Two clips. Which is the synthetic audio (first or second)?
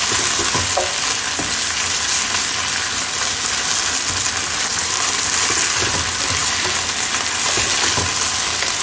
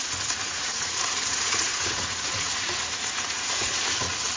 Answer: second